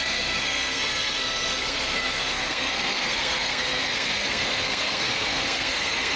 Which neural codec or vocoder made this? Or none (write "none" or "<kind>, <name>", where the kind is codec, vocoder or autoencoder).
codec, SNAC